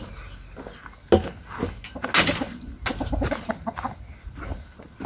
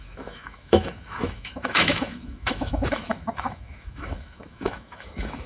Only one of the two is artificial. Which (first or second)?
second